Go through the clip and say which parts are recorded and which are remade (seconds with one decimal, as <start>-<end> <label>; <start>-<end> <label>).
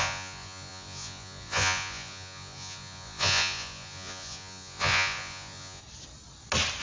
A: 0.0-5.8 remade; 5.8-6.8 recorded